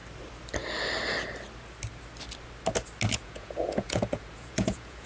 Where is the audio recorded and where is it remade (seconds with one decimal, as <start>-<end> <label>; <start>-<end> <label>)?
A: 0.0-3.1 recorded; 3.1-5.1 remade